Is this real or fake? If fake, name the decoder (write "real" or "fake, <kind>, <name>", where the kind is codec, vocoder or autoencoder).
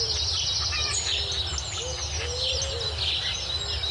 real